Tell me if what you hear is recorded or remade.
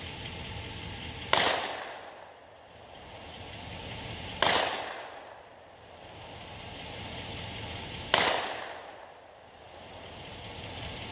recorded